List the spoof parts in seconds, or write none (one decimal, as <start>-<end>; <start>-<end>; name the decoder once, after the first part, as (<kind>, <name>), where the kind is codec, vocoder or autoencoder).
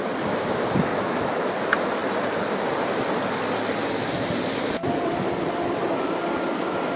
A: 0.9-1.5 (autoencoder, DAC-VAE)